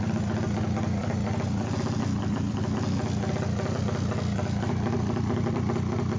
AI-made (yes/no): no